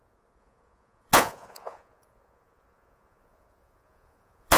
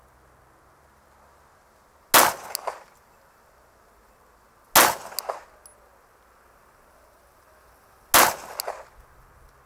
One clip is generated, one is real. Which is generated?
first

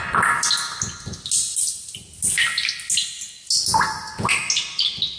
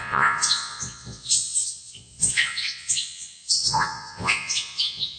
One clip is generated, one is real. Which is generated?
second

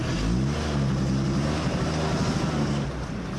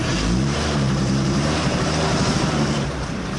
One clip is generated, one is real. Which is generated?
second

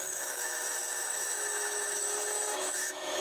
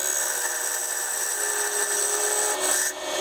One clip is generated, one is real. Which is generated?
first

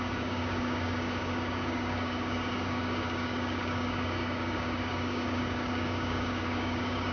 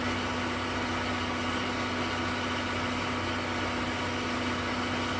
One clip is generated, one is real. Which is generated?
first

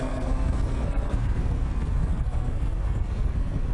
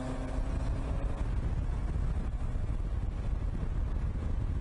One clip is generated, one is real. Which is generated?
first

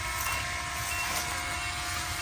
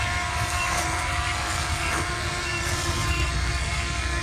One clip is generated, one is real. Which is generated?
second